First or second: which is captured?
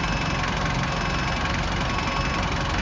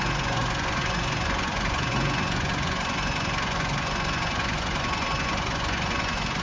first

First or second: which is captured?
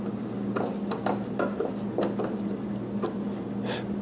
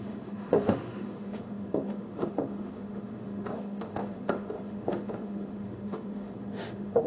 first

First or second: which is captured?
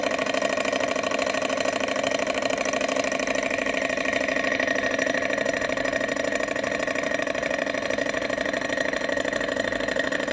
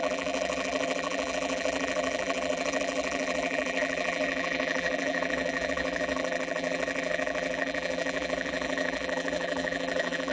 first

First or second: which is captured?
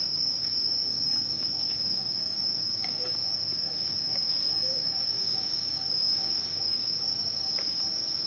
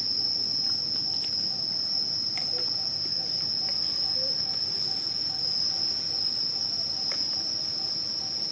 second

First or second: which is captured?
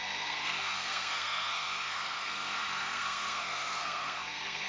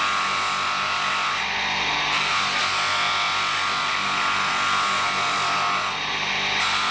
second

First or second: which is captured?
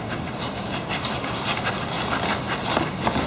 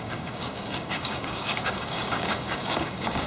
first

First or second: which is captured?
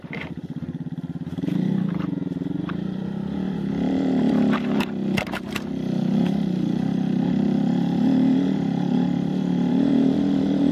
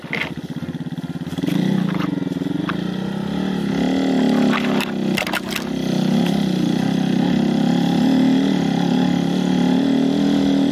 second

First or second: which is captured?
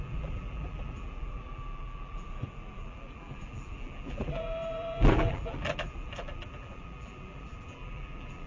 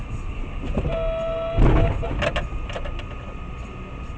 second